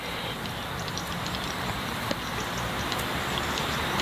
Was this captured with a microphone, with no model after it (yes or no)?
yes